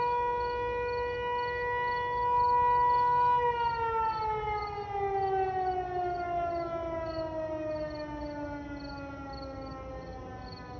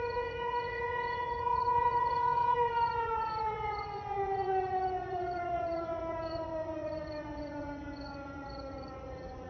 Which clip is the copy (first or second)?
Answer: second